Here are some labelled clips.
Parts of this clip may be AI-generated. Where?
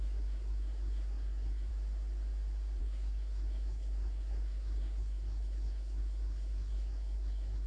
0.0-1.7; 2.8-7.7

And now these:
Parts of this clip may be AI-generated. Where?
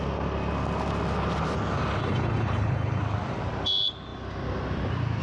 2.0-3.0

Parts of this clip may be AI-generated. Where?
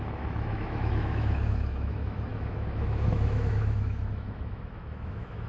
0.0-5.5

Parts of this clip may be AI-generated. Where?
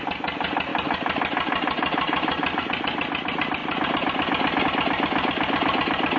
none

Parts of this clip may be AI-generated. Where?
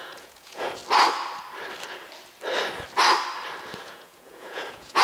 0.0-0.8; 3.8-5.0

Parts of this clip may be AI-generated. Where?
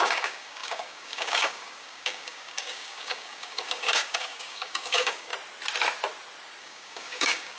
0.0-5.3; 6.6-7.6